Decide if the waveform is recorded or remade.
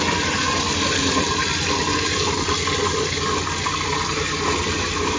recorded